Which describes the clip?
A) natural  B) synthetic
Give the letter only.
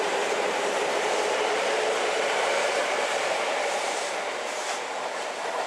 B